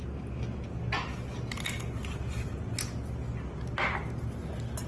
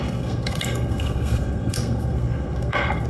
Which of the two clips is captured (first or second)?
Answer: first